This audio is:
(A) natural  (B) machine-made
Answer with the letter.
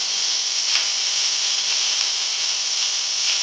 A